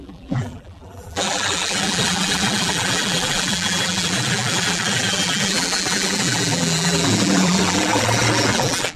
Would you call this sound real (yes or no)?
no